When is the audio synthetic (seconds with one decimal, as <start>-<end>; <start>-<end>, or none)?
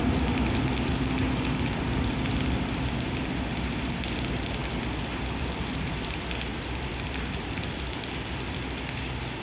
4.6-5.4; 6.5-8.9